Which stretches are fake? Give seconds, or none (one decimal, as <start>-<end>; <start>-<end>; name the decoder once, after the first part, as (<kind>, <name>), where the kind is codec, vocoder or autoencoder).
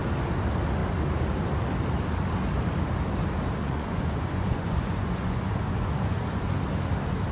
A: 3.6-6.4 (vocoder, Vocos)